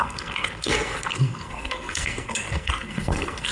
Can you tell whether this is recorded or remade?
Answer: remade